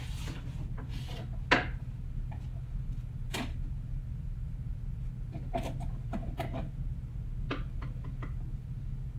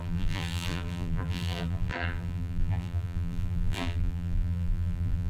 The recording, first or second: first